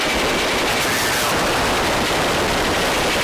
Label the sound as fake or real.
real